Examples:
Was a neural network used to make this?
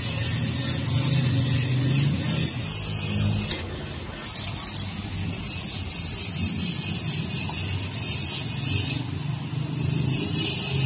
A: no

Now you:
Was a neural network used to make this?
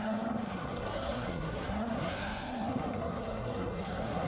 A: yes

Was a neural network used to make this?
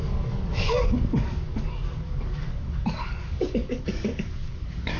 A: yes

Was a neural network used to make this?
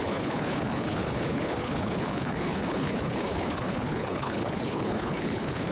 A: yes